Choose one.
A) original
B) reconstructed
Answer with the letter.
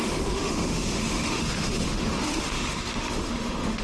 B